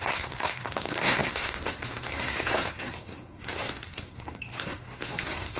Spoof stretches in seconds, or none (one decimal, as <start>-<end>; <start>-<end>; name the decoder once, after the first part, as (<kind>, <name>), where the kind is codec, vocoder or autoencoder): 0.0-5.6 (codec, SNAC)